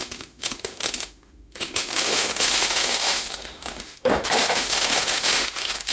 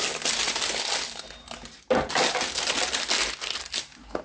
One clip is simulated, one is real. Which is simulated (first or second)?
first